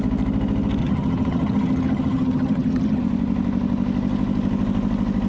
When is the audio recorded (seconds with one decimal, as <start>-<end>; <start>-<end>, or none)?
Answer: 0.0-0.8; 3.0-5.3